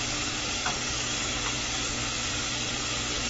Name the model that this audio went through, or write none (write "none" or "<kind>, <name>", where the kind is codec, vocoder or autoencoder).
codec, DAC